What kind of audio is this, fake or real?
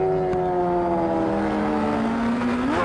real